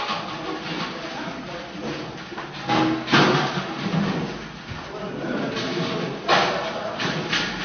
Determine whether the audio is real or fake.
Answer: real